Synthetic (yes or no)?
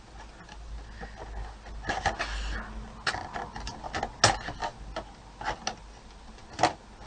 no